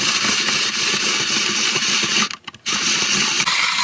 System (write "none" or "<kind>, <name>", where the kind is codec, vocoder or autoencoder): none